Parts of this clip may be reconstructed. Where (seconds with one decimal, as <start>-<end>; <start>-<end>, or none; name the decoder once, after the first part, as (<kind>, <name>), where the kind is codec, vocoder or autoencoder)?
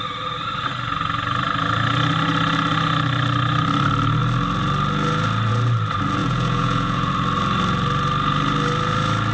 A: 6.2-7.1 (vocoder, Vocos)